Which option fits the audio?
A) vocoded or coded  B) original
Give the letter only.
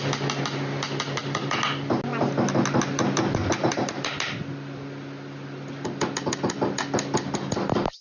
B